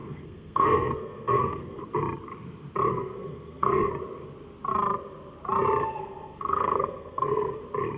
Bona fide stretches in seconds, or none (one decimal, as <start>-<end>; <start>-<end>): 1.8-2.9; 3.9-5.8; 7.6-8.0